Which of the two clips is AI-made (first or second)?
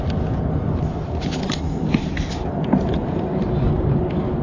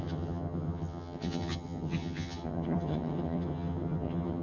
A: second